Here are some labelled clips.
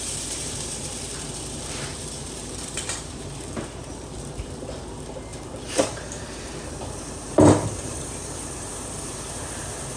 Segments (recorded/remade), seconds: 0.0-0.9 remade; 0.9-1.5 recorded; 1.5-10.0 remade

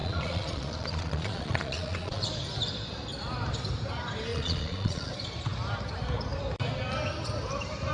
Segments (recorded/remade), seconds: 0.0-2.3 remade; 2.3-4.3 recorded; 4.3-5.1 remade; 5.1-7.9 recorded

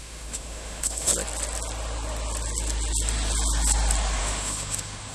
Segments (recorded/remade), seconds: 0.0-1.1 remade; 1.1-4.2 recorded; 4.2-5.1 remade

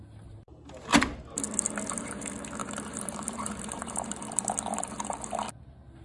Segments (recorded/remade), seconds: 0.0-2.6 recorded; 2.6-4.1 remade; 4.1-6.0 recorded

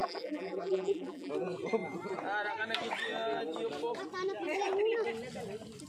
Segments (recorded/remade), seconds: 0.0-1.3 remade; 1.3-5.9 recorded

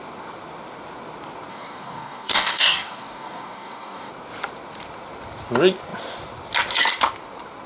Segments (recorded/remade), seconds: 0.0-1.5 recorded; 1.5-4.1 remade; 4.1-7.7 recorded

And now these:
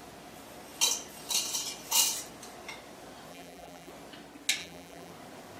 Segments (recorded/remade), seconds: 0.0-3.3 recorded; 3.3-3.9 remade; 3.9-4.6 recorded; 4.6-5.1 remade; 5.1-5.6 recorded

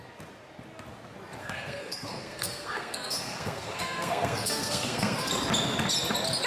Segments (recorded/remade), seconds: 0.0-1.4 recorded; 1.4-5.3 remade; 5.3-6.5 recorded